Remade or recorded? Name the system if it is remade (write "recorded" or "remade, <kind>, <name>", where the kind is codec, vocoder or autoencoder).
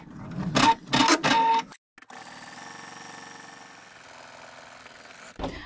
recorded